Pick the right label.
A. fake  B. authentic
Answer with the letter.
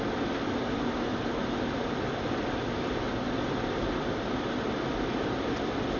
B